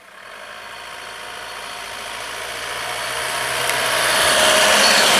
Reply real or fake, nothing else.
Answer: real